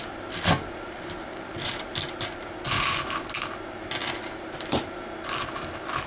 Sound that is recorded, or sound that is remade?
recorded